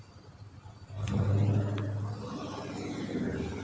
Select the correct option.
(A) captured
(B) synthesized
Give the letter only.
A